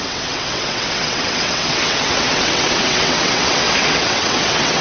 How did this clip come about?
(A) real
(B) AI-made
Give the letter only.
B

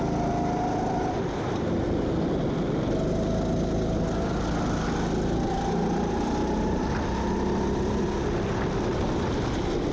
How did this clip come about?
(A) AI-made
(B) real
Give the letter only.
B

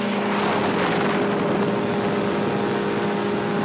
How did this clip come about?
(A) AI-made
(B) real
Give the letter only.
B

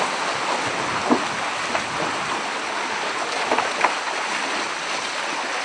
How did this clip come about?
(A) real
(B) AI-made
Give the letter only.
A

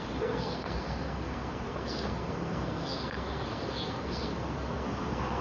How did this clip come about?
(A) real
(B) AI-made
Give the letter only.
B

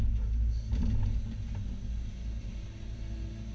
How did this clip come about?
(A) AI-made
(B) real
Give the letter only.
B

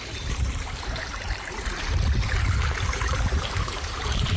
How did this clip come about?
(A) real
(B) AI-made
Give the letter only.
B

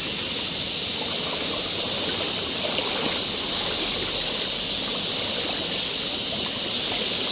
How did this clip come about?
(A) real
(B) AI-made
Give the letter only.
A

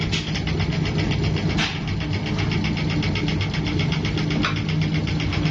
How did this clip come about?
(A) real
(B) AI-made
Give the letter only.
A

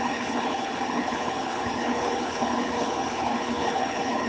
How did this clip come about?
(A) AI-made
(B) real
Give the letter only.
A